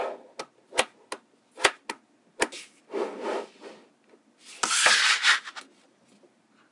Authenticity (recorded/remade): recorded